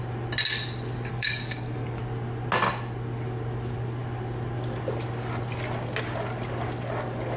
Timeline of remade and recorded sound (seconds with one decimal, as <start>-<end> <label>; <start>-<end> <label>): 0.0-1.1 recorded; 1.1-2.0 remade; 2.0-7.4 recorded